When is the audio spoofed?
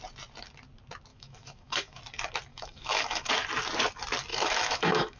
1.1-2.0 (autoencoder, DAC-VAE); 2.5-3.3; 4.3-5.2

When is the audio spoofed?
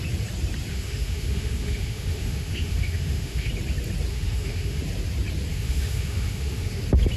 0.7-3.5 (autoencoder, DAC-VAE); 4.1-4.8; 5.5-6.8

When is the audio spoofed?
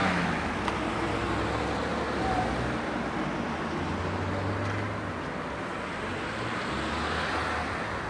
0.0-0.6 (autoencoder, DAC-VAE)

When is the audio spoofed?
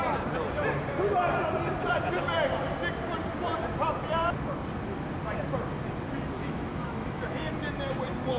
6.4-7.5 (autoencoder, DAC-VAE)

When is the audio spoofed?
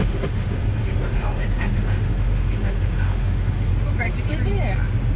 0.0-3.7 (autoencoder, DAC-VAE)